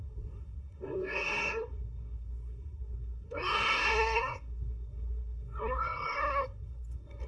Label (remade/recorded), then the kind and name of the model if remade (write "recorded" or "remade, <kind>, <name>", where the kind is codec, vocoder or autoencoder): remade, codec, SNAC